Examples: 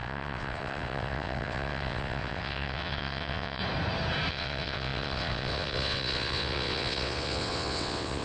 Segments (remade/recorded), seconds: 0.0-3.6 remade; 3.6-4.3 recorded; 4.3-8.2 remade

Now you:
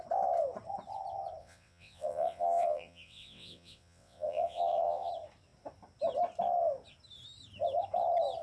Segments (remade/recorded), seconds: 0.0-1.4 recorded; 1.4-5.1 remade; 5.1-8.4 recorded

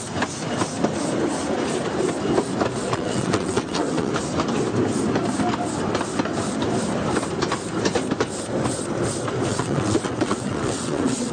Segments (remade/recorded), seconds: 0.0-2.8 recorded; 2.8-4.1 remade; 4.1-9.5 recorded; 9.5-11.3 remade

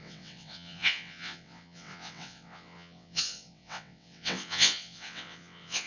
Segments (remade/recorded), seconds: 0.0-5.9 remade